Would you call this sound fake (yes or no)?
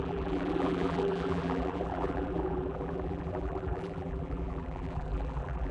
yes